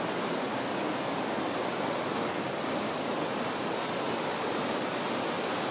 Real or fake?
real